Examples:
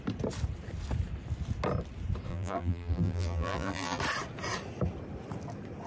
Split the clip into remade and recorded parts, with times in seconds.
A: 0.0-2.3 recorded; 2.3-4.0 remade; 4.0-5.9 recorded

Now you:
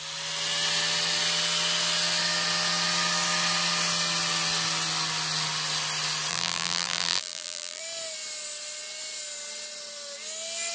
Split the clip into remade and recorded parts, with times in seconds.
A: 0.0-6.3 recorded; 6.3-7.8 remade; 7.8-10.7 recorded

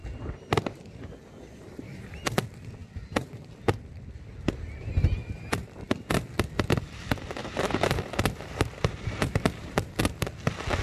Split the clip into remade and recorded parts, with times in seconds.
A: 0.0-1.2 remade; 1.2-7.4 recorded; 7.4-10.0 remade; 10.0-10.8 recorded

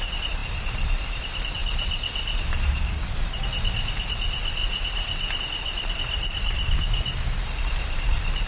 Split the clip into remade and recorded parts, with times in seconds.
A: 0.0-1.6 remade; 1.6-3.4 recorded; 3.4-4.6 remade; 4.6-5.4 recorded; 5.4-8.5 remade